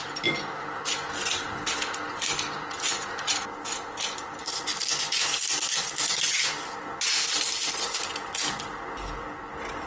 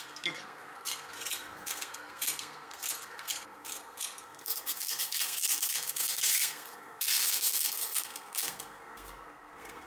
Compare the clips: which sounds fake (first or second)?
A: second